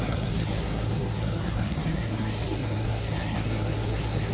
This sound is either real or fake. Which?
fake